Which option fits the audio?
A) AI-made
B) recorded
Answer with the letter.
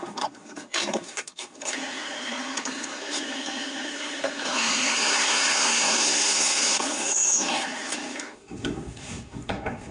A